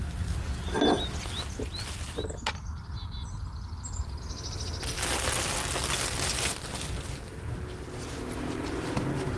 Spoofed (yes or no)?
no